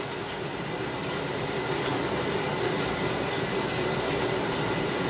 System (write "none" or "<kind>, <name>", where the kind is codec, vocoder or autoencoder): none